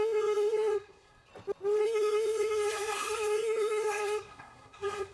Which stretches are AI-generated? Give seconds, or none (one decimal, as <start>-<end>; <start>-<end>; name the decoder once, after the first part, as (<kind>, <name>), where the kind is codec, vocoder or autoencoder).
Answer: 0.0-1.3 (codec, SNAC); 1.8-5.1